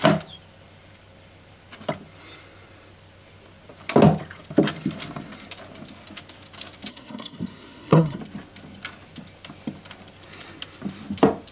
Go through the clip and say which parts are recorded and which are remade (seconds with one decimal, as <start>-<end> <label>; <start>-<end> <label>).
0.0-6.9 recorded; 6.9-8.2 remade; 8.2-11.5 recorded